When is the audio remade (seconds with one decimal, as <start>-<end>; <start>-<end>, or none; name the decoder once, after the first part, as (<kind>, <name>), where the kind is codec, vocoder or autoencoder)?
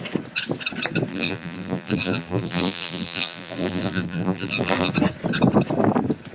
1.1-4.9 (vocoder, BigVGAN v2)